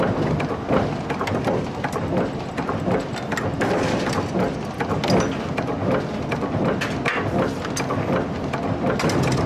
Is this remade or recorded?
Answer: recorded